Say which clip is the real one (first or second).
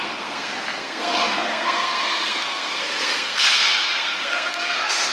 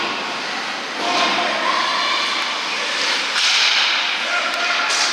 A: second